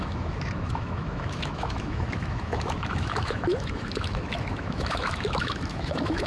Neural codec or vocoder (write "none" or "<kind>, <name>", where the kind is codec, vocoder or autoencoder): autoencoder, DAC-VAE